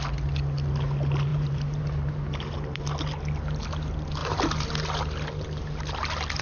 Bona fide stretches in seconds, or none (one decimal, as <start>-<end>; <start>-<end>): 0.0-1.3; 2.8-6.4